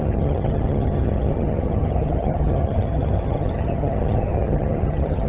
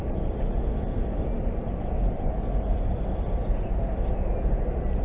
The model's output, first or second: first